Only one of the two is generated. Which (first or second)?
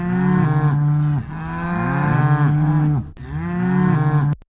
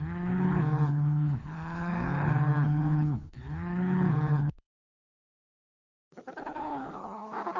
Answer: second